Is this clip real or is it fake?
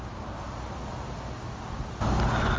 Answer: real